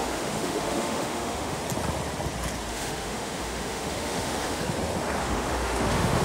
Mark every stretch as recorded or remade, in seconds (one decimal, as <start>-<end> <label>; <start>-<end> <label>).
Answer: 0.0-1.6 remade; 1.6-2.7 recorded; 2.7-4.6 remade; 4.6-5.2 recorded; 5.2-6.2 remade